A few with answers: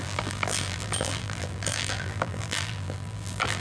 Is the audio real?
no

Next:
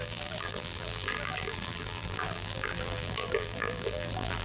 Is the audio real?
no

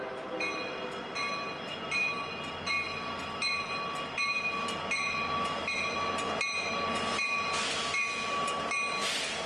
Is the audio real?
yes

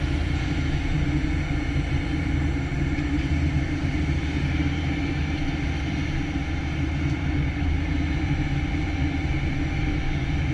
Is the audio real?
no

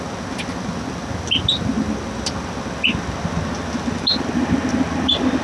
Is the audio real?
yes